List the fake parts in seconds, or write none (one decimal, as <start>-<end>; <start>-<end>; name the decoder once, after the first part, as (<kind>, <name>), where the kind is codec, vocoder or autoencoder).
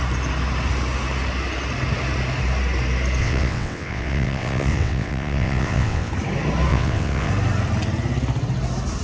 3.2-6.1 (vocoder, WaveNeXt); 6.7-7.3